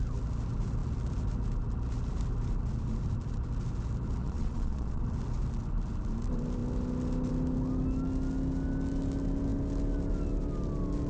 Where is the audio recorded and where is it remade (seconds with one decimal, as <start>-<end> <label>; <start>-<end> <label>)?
0.0-4.2 recorded; 4.2-5.0 remade; 5.0-11.1 recorded